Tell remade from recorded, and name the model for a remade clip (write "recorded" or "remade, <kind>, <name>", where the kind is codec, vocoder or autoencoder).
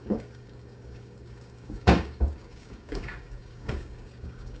remade, codec, DAC